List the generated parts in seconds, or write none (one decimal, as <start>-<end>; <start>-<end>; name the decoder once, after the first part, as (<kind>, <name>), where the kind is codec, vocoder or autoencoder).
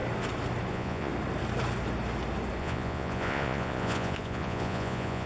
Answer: 0.7-1.1 (vocoder, Vocos); 2.6-5.3